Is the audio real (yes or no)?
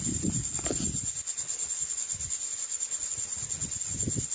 yes